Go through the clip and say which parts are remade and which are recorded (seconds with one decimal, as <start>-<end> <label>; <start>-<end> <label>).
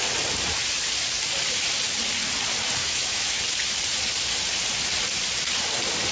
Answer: 0.0-2.8 recorded; 2.8-3.4 remade; 3.4-6.1 recorded